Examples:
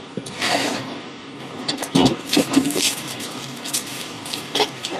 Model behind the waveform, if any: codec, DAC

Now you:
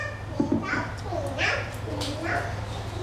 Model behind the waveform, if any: none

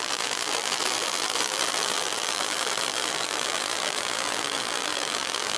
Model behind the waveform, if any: vocoder, BigVGAN v2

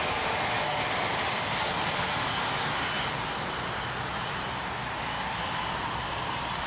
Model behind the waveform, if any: none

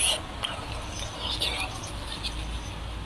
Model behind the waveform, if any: none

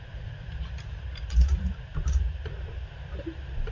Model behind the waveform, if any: vocoder, BigVGAN v2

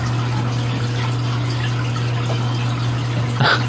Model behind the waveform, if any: none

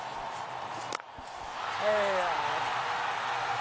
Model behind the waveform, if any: none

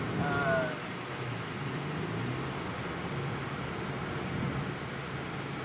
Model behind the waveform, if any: none